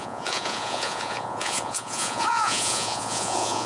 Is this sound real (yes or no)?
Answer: no